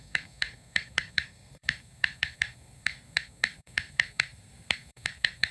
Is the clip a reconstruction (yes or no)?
yes